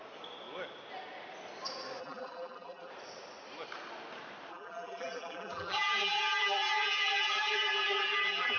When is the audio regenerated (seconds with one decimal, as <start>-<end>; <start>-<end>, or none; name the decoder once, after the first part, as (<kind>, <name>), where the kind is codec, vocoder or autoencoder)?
2.0-2.9 (vocoder, BigVGAN v2); 4.5-8.6